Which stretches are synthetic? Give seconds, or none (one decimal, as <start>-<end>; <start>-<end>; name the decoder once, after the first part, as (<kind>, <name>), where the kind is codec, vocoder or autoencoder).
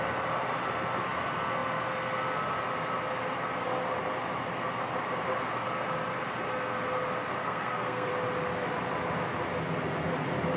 7.4-8.1 (codec, SNAC)